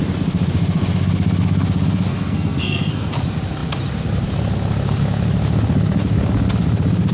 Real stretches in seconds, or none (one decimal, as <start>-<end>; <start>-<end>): 0.0-2.1; 3.1-7.1